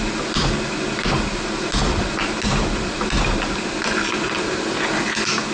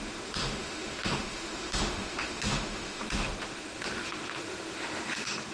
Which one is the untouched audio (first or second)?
first